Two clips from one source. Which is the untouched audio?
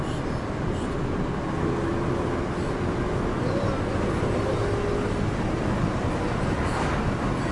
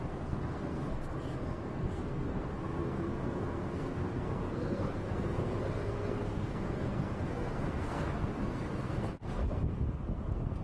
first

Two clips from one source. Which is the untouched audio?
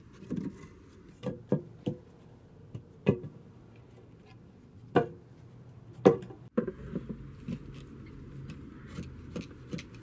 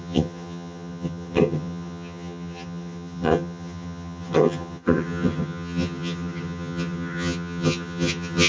first